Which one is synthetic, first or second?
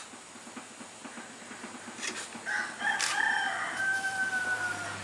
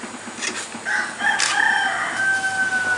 first